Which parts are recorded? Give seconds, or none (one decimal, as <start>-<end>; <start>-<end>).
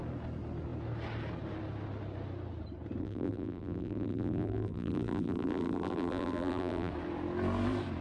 0.0-3.0; 6.9-8.0